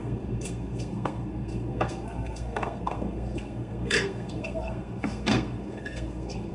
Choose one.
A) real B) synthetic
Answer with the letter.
B